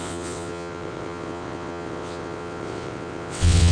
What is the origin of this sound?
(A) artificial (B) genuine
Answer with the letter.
A